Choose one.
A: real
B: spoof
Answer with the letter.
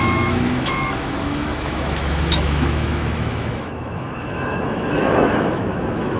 B